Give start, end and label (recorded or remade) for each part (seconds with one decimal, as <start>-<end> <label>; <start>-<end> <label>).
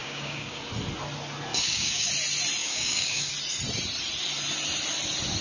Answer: 0.0-0.6 remade; 0.6-1.5 recorded; 1.5-2.1 remade; 2.1-2.6 recorded; 2.6-3.3 remade; 3.3-5.4 recorded